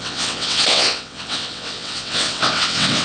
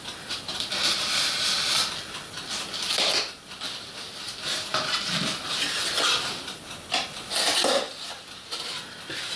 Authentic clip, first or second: second